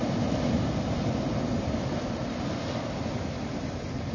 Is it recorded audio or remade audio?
recorded